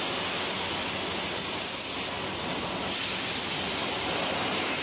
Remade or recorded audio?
recorded